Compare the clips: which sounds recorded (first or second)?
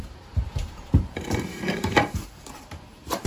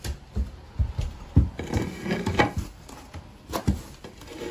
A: second